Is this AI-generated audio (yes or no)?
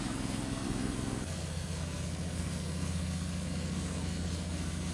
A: yes